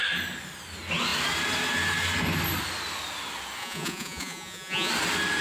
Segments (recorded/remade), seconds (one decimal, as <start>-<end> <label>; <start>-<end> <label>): 0.0-3.6 recorded; 3.6-4.9 remade; 4.9-5.4 recorded